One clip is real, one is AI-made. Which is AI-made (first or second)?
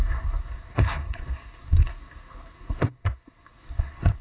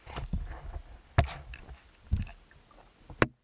first